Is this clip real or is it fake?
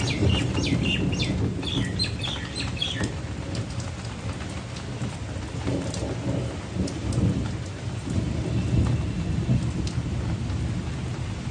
real